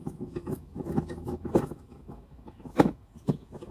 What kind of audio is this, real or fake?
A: fake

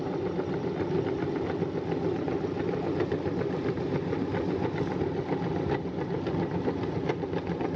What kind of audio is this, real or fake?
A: real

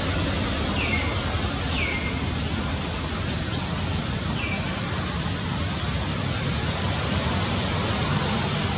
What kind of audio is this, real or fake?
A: real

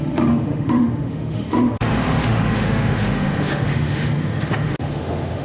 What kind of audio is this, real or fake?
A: fake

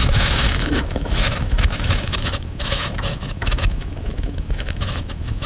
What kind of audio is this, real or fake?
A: fake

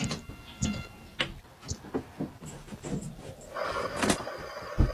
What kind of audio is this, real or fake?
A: real